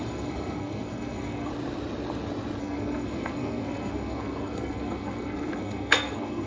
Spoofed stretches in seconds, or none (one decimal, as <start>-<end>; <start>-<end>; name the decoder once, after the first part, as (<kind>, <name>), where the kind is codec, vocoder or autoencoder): 0.0-1.5 (codec, SNAC); 2.6-6.5